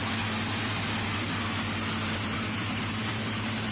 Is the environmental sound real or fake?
real